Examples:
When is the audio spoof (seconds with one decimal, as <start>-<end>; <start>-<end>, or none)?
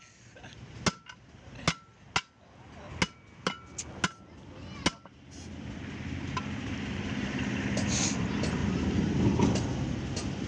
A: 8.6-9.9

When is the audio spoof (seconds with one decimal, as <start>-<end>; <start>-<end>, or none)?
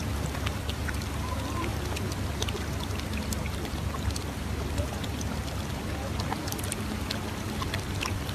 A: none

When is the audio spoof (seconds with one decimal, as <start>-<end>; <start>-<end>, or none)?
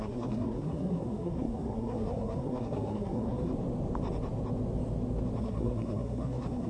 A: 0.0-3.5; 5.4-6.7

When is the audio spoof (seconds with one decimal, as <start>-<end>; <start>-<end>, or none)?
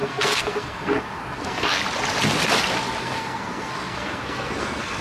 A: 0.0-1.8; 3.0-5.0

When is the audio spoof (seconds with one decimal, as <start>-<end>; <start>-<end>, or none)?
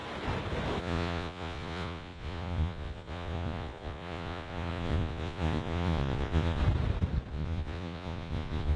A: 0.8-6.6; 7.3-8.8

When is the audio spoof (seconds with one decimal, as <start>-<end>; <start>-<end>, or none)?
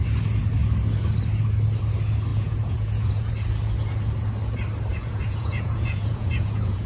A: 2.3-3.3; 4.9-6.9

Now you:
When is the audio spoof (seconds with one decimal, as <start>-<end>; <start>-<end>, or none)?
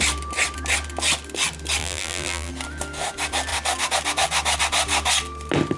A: 1.8-2.5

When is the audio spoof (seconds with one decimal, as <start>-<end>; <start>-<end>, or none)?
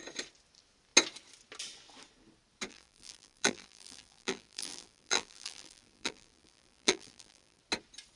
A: 2.7-7.6